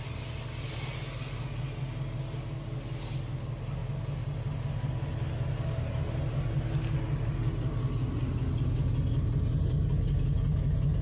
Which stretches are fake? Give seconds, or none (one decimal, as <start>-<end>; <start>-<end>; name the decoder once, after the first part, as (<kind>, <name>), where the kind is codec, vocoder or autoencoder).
none